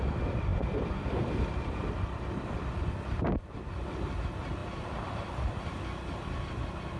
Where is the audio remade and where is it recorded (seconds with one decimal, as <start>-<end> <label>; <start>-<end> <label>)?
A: 0.0-7.0 recorded